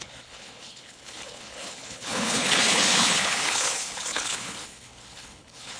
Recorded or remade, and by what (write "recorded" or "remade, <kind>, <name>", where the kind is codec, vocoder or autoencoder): remade, codec, HILCodec